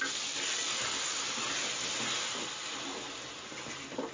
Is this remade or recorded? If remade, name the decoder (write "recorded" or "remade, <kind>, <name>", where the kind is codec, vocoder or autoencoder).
recorded